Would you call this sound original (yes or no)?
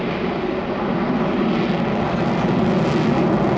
yes